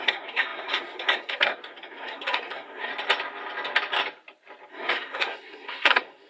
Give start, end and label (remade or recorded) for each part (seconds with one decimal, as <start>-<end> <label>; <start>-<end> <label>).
0.0-2.9 remade; 2.9-4.7 recorded; 4.7-6.3 remade